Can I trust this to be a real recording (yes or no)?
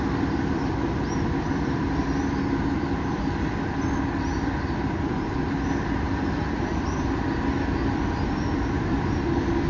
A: yes